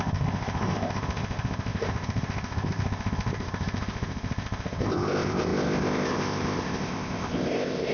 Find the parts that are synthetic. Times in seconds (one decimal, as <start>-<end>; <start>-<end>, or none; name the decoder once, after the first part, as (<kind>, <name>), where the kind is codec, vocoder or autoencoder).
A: 0.0-7.9 (codec, ZipCodec)